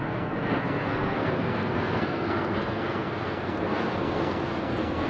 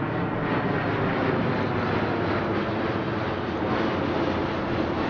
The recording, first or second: second